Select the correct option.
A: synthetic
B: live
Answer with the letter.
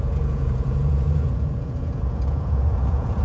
A